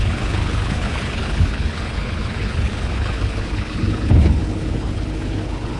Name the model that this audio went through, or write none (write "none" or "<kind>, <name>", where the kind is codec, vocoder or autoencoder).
codec, HILCodec